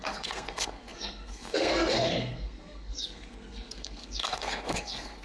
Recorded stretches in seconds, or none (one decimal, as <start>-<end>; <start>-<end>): none